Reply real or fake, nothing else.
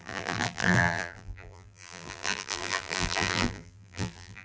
fake